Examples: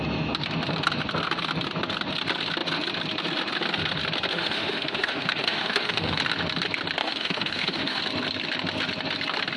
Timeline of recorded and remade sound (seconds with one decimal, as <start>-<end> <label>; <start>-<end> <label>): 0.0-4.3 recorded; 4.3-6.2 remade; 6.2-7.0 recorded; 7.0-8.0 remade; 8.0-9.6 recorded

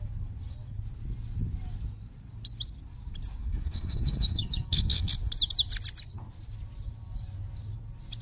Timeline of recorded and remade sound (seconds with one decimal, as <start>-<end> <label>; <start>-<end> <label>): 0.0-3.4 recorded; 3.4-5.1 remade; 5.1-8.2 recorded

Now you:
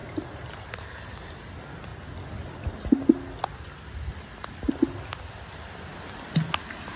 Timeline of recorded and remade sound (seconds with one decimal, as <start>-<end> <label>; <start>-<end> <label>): 0.0-7.0 recorded